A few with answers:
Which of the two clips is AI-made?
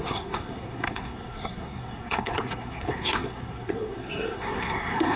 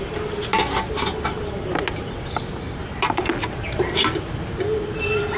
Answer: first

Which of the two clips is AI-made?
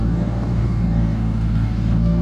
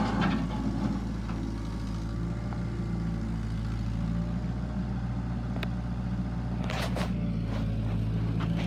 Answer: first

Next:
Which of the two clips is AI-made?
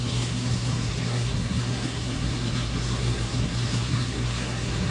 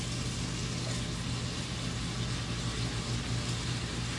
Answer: first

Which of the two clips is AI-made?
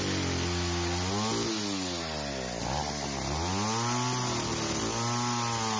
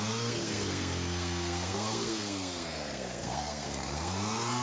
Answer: second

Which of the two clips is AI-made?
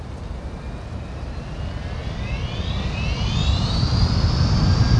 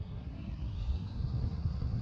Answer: second